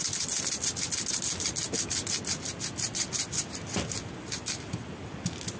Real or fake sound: real